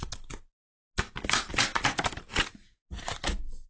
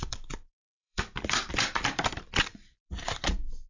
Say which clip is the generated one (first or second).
second